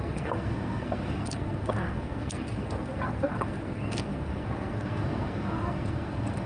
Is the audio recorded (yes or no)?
no